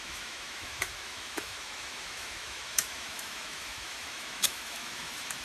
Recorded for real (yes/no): no